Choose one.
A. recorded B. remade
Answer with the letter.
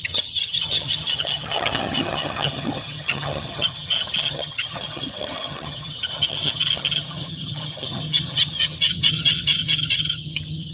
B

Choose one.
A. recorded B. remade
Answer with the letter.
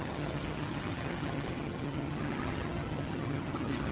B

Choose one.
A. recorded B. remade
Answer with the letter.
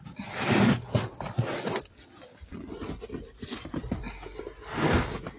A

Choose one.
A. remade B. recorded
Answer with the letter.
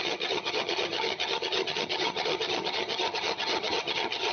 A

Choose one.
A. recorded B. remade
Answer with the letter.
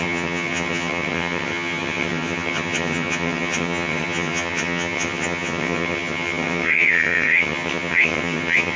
B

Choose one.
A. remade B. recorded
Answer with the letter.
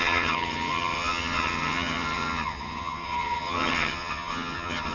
A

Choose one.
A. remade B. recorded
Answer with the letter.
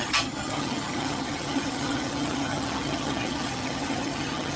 A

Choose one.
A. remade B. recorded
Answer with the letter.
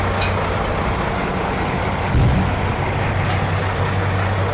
B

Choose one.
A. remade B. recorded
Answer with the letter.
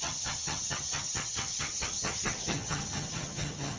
A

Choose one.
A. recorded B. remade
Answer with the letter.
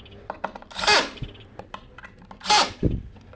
A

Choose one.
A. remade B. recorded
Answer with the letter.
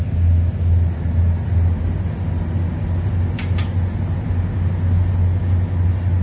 B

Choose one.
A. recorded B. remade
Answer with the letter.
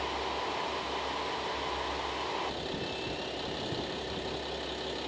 A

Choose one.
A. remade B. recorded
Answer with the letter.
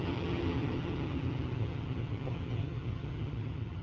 A